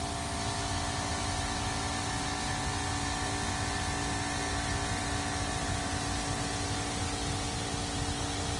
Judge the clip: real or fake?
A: real